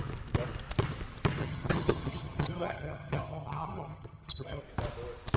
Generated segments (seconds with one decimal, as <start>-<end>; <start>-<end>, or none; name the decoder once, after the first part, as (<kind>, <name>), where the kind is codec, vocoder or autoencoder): 1.4-4.6 (vocoder, HiFi-GAN)

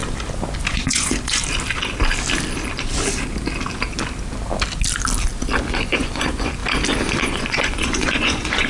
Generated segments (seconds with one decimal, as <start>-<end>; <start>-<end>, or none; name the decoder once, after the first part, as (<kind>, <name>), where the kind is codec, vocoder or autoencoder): 0.7-1.4 (vocoder, Vocos); 5.7-6.6; 7.2-8.7

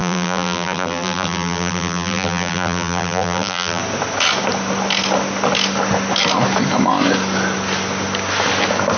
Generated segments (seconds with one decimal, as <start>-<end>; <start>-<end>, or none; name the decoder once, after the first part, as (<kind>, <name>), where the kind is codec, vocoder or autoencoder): 0.0-3.8 (vocoder, BigVGAN v2)

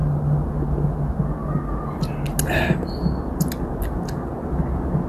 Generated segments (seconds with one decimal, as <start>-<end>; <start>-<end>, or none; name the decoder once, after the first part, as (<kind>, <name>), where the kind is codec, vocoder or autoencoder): none

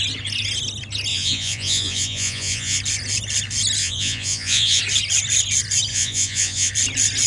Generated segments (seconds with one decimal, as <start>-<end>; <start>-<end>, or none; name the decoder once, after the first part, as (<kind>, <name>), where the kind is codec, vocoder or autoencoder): 1.1-2.8 (vocoder, Vocos); 3.8-4.8; 5.9-6.7

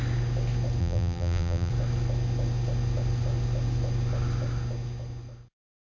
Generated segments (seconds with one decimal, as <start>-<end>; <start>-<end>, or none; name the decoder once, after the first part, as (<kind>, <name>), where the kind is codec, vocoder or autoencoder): 0.8-1.7 (vocoder, BigVGAN v2)

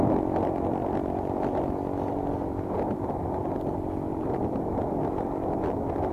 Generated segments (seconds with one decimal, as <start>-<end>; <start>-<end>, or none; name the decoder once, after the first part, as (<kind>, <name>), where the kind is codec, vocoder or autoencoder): 4.1-4.8 (vocoder, BigVGAN v2)